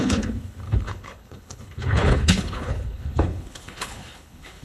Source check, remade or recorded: remade